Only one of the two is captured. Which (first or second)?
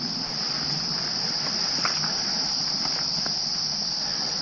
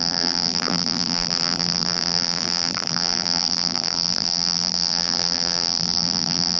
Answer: first